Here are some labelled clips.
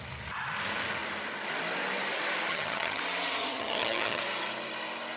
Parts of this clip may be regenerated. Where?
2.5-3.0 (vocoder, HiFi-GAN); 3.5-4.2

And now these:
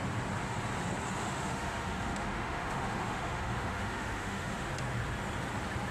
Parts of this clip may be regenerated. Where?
1.2-4.7 (autoencoder, DAC-VAE)

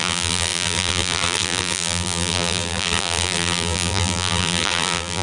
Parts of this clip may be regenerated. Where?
0.0-5.2 (vocoder, BigVGAN v2)

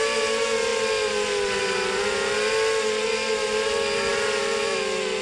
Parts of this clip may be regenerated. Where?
none

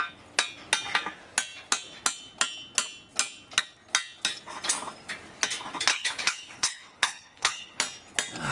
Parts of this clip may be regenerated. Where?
5.9-7.8 (codec, HILCodec)

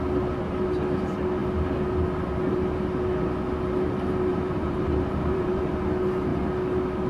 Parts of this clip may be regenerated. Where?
4.3-5.6 (vocoder, BigVGAN v2)

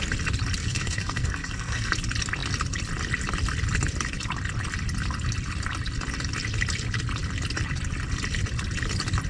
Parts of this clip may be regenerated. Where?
0.6-1.9 (codec, SNAC)